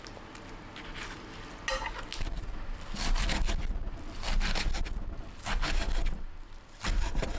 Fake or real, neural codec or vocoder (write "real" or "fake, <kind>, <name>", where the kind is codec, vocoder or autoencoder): real